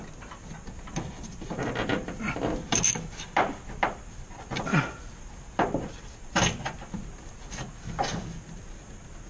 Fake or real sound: real